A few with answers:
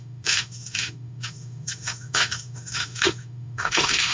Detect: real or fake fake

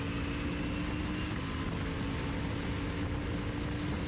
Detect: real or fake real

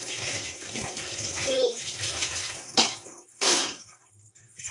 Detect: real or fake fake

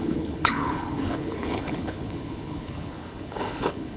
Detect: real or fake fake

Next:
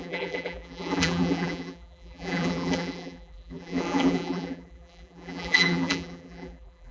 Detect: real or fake fake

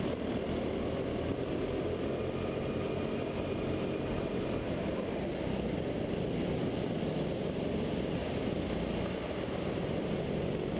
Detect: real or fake real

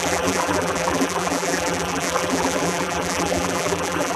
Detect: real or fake fake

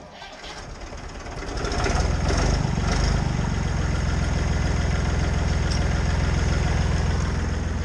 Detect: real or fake real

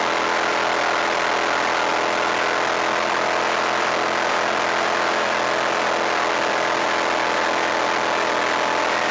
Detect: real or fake real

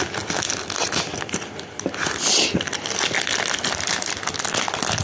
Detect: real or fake real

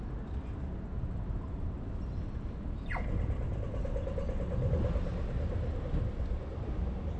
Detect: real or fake real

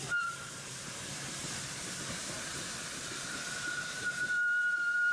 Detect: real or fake real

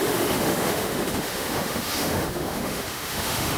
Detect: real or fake fake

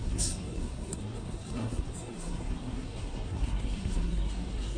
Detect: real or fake fake